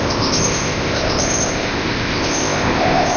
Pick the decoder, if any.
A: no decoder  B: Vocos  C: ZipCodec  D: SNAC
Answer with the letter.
C